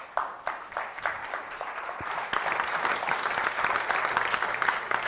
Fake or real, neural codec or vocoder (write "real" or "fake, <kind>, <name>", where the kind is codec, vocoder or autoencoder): real